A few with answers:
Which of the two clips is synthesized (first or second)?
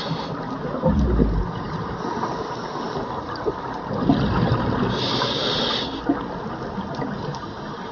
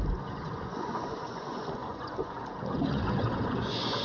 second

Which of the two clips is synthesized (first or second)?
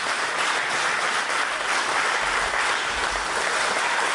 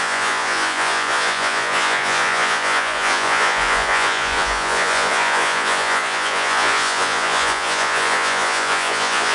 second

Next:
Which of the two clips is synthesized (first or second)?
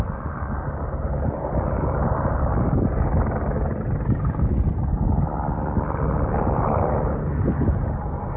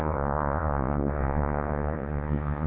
second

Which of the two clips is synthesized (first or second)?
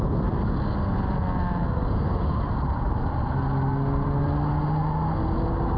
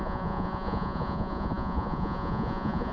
second